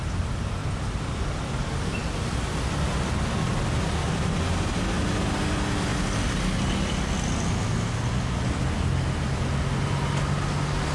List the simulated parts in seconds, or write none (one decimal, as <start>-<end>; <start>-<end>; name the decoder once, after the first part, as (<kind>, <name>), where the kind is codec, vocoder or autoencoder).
none